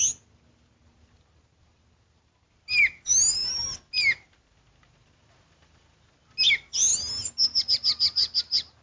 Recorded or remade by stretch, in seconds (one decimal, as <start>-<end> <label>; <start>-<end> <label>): 0.0-8.8 recorded